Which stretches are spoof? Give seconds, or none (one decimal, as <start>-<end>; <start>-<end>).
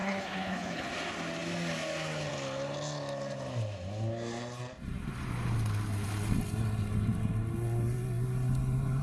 0.0-0.9